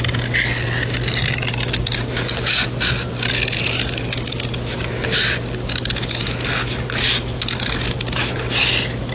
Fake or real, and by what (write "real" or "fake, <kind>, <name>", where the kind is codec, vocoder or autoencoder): real